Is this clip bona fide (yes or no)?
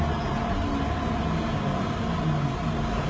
yes